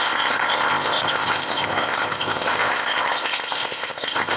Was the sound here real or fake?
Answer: fake